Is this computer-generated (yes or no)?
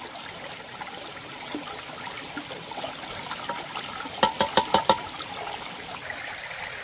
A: no